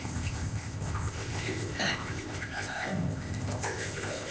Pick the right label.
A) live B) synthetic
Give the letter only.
B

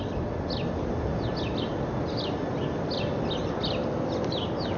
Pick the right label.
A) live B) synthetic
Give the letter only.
A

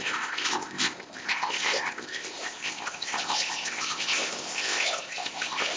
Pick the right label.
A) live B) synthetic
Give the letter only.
B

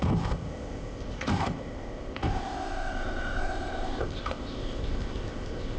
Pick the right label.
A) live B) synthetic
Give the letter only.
B